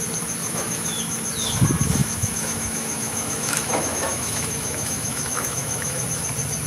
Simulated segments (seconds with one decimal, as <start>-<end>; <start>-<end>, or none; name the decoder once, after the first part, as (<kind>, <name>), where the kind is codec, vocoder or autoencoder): 0.4-1.0 (autoencoder, DAC-VAE); 2.0-6.0